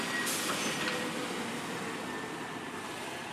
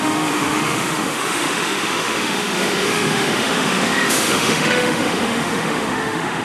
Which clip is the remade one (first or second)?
second